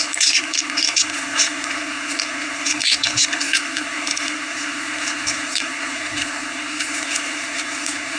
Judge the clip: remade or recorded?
remade